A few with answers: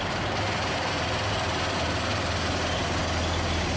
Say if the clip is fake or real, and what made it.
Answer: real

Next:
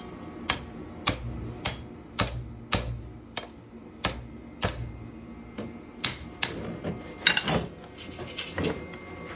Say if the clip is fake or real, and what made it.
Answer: real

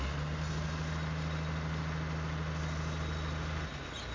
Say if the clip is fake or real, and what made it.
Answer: real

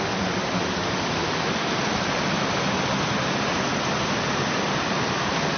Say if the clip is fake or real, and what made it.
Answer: real